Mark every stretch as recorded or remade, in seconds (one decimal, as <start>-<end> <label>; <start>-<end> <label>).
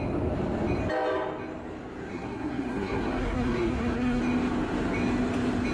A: 0.0-2.1 recorded; 2.1-4.2 remade; 4.2-5.7 recorded